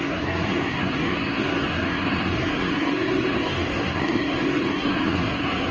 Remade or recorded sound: remade